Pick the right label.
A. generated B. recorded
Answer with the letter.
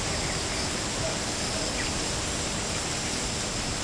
B